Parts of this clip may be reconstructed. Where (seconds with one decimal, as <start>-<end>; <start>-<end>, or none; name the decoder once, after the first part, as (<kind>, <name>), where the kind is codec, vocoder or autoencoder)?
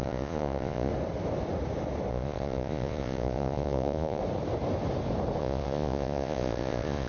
0.0-0.9 (vocoder, Vocos); 2.1-4.2; 5.4-7.1